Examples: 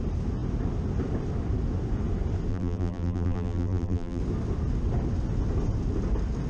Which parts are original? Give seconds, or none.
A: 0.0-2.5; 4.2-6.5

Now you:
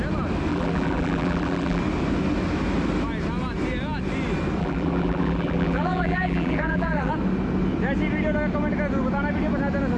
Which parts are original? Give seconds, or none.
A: 0.0-0.5; 1.8-4.6; 7.1-10.0